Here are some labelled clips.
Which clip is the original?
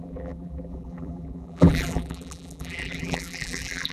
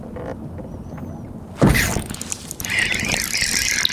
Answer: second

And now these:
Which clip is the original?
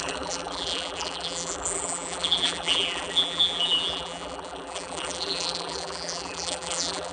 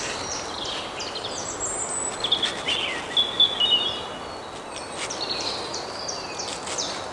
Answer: second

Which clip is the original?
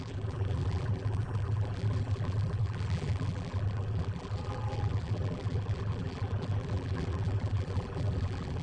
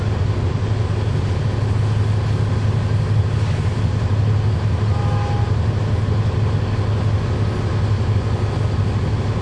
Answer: second